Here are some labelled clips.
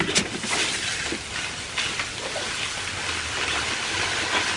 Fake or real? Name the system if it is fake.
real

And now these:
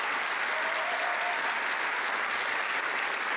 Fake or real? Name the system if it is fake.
real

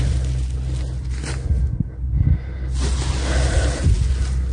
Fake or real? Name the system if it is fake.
real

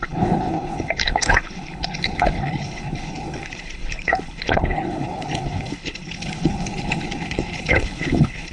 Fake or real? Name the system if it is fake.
fake, codec, HILCodec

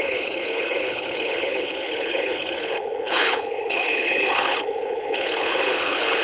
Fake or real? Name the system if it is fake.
fake, codec, HILCodec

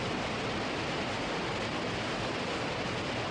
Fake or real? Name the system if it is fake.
real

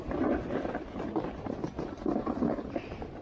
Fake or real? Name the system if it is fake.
real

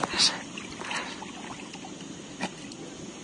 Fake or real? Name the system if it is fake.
real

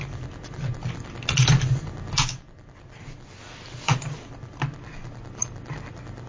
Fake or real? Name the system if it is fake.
real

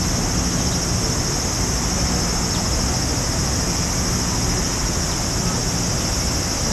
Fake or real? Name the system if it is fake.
real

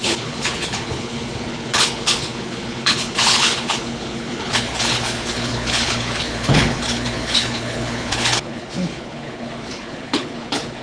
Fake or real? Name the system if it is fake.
fake, codec, HILCodec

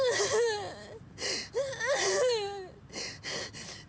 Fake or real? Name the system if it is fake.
real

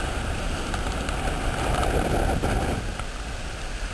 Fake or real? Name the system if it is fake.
real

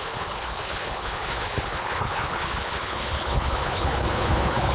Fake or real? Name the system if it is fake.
fake, codec, HILCodec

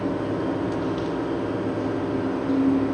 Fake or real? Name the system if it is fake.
real